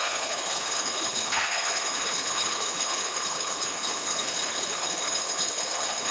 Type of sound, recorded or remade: remade